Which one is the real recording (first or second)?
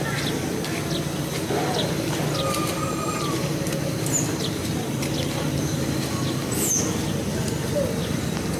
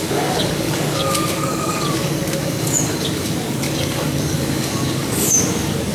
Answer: first